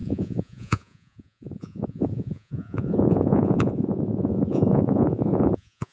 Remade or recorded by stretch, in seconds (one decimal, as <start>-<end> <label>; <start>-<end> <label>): 0.0-5.9 remade